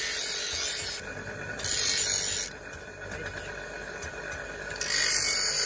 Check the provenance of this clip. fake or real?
real